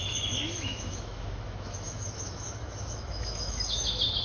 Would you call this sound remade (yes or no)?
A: yes